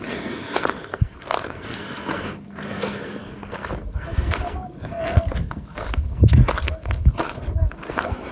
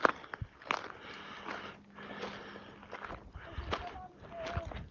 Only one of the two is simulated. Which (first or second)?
first